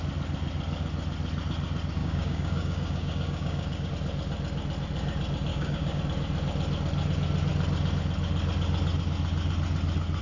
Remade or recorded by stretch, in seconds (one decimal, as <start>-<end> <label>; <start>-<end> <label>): 0.0-2.0 recorded; 2.0-3.9 remade; 3.9-5.5 recorded; 5.5-6.0 remade; 6.0-10.2 recorded

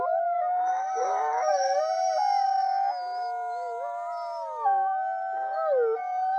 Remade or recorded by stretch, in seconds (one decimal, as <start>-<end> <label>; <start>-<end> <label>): 0.0-0.7 recorded; 0.7-1.8 remade; 1.8-6.4 recorded

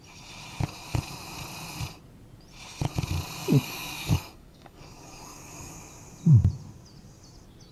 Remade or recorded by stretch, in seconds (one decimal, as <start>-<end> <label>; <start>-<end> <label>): 0.0-3.4 recorded; 3.4-5.7 remade; 5.7-7.7 recorded

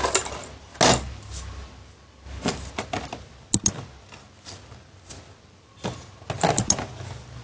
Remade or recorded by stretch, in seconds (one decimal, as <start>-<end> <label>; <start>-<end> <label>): 0.0-7.4 recorded

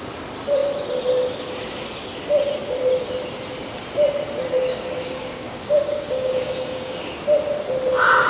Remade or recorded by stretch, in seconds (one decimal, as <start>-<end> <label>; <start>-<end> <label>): 0.0-4.7 recorded; 4.7-7.1 remade; 7.1-8.3 recorded

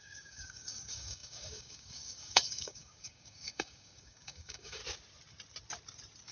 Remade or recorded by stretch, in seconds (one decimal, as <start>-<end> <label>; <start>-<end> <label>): 0.0-4.8 remade; 4.8-6.3 recorded